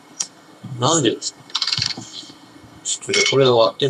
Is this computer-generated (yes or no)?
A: yes